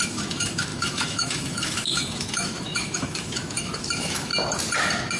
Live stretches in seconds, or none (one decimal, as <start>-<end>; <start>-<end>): 4.3-5.2